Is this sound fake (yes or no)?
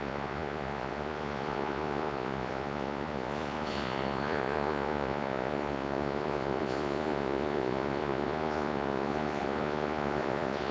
yes